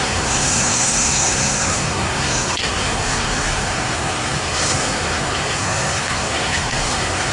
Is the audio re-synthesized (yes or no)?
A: yes